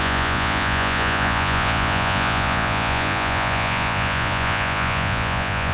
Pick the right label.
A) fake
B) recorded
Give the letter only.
A